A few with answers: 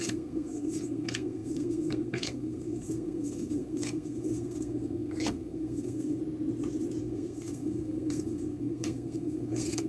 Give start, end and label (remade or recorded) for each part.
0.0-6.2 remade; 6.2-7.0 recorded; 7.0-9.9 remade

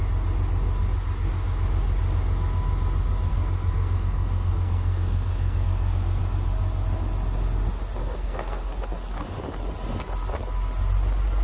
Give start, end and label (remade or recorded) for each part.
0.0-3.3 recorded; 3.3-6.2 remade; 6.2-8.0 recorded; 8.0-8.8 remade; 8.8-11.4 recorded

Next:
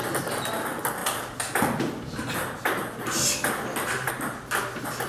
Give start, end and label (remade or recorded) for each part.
0.0-5.1 recorded

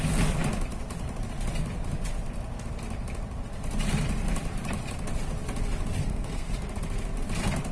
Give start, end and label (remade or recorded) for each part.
0.0-6.0 recorded; 6.0-6.5 remade; 6.5-7.7 recorded